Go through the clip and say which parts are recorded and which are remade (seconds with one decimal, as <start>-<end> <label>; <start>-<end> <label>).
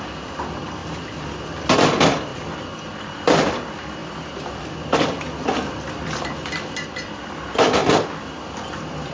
0.0-0.8 recorded; 0.8-1.5 remade; 1.5-2.3 recorded; 2.3-3.5 remade; 3.5-4.0 recorded; 4.0-6.9 remade; 6.9-9.1 recorded